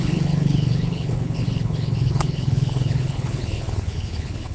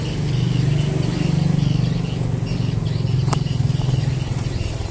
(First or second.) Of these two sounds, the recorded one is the second